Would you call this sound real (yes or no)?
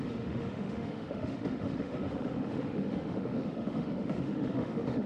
no